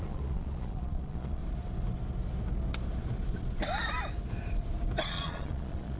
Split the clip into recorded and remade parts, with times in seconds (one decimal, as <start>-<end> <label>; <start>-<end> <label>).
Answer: 0.0-1.4 remade; 1.4-5.0 recorded; 5.0-6.0 remade